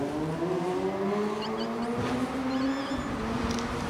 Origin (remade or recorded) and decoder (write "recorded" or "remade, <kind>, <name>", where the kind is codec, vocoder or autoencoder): recorded